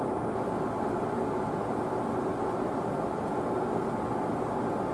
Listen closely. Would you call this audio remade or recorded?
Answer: recorded